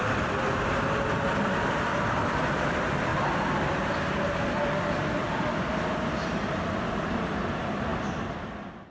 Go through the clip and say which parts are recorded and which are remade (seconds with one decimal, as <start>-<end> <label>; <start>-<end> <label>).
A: 0.0-1.9 recorded; 1.9-2.5 remade; 2.5-5.0 recorded; 5.0-6.7 remade; 6.7-7.9 recorded; 7.9-8.9 remade